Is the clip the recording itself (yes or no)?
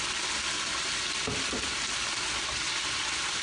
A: yes